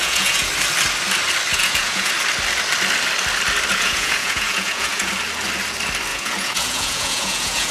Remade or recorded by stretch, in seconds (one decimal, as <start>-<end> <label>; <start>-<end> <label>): 0.0-0.5 remade; 0.5-1.5 recorded; 1.5-2.1 remade; 2.1-3.7 recorded; 3.7-5.1 remade; 5.1-6.1 recorded; 6.1-7.7 remade